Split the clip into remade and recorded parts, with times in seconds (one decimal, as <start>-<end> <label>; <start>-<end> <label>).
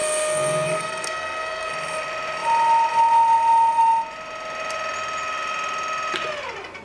0.0-1.7 remade; 1.7-6.8 recorded